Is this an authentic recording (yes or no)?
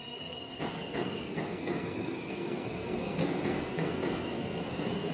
no